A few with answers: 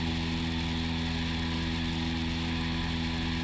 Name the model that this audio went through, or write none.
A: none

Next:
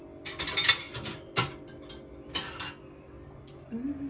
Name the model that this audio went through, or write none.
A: none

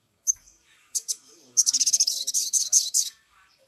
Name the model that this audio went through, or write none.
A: codec, DAC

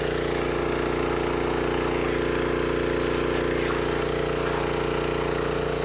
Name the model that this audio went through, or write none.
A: none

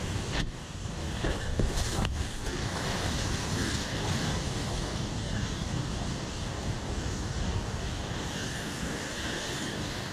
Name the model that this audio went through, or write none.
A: codec, DAC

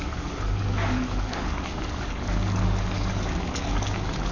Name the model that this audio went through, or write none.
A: codec, DAC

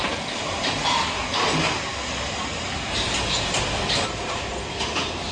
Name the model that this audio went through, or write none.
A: none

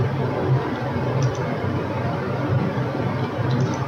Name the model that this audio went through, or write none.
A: none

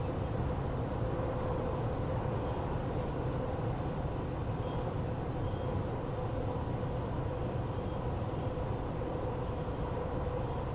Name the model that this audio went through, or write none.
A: none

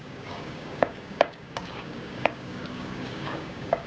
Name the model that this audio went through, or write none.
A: codec, DAC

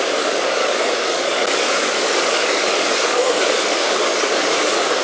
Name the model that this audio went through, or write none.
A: codec, DAC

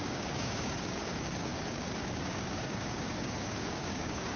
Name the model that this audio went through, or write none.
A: codec, DAC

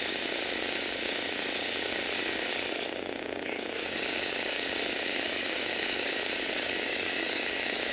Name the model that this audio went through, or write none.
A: codec, DAC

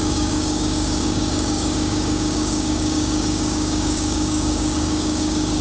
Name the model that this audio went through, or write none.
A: codec, DAC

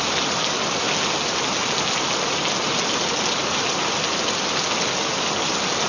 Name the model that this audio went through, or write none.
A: none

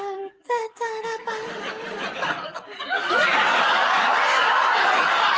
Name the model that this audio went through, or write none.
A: codec, DAC